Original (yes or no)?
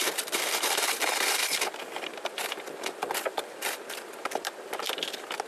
no